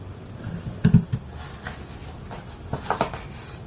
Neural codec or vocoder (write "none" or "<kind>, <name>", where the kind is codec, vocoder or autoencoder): none